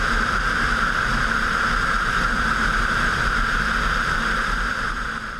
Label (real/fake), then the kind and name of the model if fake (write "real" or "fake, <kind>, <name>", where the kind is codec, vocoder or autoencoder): fake, vocoder, BigVGAN v2